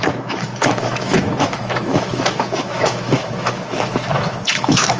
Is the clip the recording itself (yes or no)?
no